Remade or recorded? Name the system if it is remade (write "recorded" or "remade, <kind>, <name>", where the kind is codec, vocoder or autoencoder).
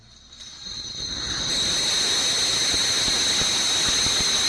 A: recorded